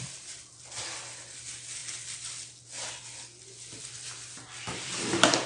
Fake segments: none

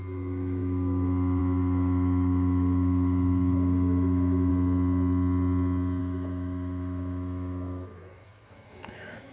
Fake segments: 0.0-4.5 (autoencoder, DAC-VAE); 6.0-9.3